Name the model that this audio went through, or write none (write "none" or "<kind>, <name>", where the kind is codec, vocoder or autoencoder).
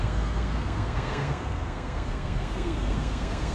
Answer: codec, SNAC